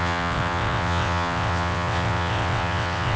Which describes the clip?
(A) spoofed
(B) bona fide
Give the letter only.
A